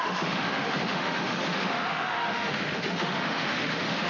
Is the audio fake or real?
fake